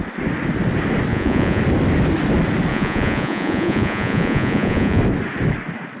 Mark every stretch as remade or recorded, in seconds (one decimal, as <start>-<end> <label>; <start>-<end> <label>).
0.0-1.1 recorded; 1.1-1.6 remade; 1.6-2.7 recorded; 2.7-5.0 remade; 5.0-6.0 recorded